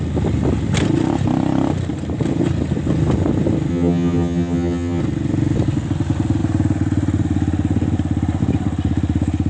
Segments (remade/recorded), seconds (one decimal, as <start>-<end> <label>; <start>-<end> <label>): 0.0-3.7 recorded; 3.7-5.0 remade; 5.0-9.5 recorded